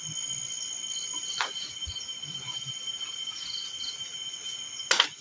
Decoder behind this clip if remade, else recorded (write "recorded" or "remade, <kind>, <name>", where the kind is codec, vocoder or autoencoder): recorded